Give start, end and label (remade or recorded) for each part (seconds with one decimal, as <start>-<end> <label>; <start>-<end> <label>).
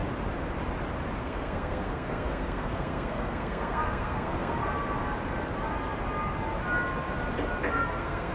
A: 0.0-1.2 recorded; 1.2-4.6 remade; 4.6-7.7 recorded; 7.7-8.3 remade